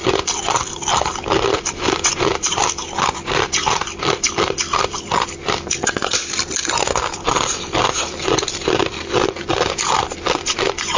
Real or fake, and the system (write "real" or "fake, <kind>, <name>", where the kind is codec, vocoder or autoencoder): fake, vocoder, BigVGAN v2